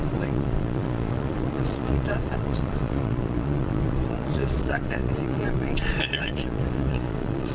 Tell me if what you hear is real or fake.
fake